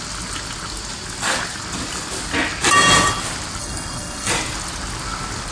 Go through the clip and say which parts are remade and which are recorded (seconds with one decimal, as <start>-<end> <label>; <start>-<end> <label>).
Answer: 0.0-3.6 recorded; 3.6-4.3 remade; 4.3-5.5 recorded